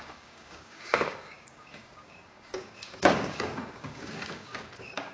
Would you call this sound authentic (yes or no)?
no